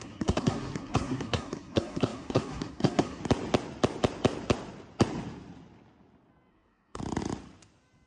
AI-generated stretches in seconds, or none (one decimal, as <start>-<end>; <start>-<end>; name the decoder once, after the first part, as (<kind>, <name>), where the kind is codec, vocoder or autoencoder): 0.0-3.2 (codec, SNAC); 6.5-7.0